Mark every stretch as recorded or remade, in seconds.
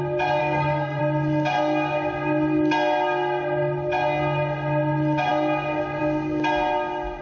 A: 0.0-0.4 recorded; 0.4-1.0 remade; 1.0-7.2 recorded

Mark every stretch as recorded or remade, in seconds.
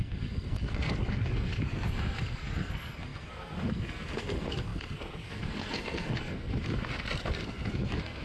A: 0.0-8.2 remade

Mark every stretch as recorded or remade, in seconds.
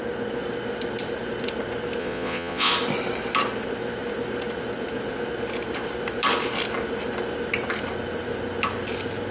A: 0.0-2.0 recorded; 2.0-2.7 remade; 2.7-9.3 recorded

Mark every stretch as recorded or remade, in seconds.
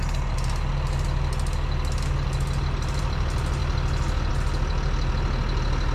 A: 0.0-5.9 recorded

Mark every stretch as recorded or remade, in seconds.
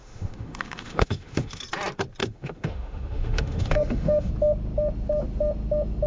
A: 0.0-1.6 remade; 1.6-2.2 recorded; 2.2-4.3 remade; 4.3-6.1 recorded